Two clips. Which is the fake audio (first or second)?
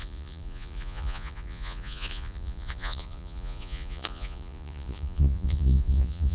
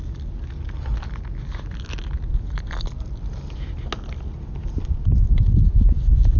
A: first